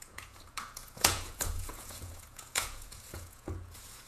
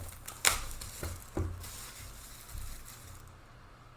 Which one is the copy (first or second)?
first